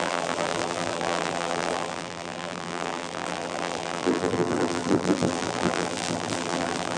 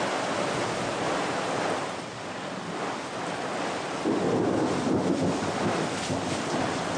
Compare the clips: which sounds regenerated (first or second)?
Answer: first